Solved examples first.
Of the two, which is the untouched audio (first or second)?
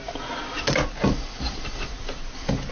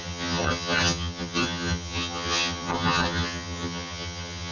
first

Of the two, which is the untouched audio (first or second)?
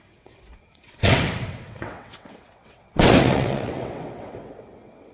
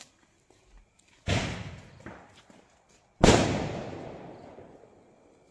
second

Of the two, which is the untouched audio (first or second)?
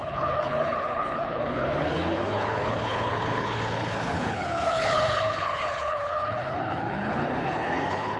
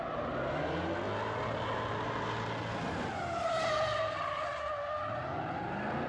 second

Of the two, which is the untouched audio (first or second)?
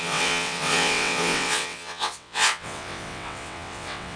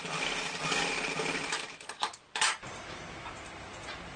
second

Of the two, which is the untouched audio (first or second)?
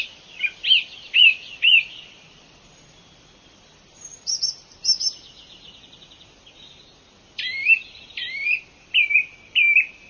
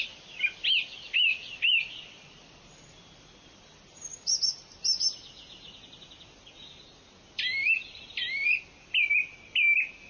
second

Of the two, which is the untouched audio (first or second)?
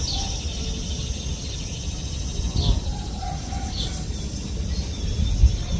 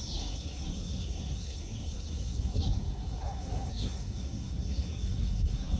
first